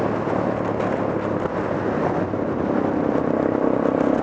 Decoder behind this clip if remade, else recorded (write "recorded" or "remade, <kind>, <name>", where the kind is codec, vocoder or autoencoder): recorded